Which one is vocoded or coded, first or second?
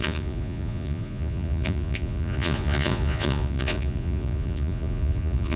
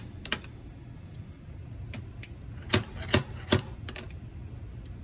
first